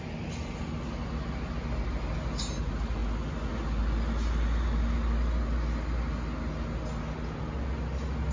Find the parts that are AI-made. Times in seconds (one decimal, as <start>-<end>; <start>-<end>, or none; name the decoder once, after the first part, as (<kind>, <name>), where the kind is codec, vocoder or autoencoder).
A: none